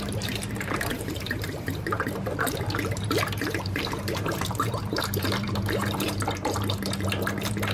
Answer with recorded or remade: remade